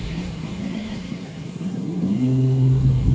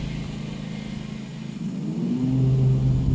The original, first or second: second